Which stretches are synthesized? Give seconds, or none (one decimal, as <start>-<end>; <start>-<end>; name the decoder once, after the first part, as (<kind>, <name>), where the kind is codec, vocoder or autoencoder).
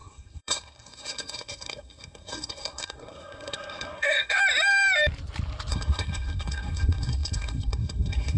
0.0-4.4 (codec, SNAC); 5.7-8.4